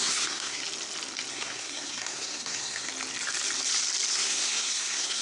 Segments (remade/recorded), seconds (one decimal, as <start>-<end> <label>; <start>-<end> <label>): 0.0-0.6 remade; 0.6-1.3 recorded; 1.3-2.9 remade; 2.9-4.1 recorded; 4.1-5.2 remade